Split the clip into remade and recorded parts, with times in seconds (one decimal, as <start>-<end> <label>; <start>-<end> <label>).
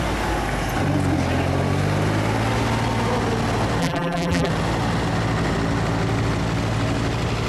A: 0.0-3.8 recorded; 3.8-4.5 remade; 4.5-7.5 recorded